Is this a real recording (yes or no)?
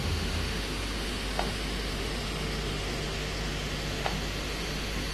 no